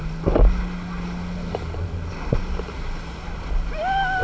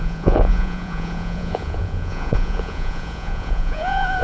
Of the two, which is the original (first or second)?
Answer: first